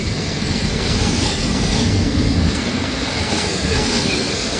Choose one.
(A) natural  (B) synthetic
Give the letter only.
B